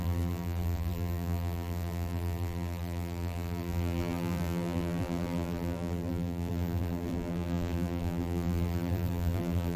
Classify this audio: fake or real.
fake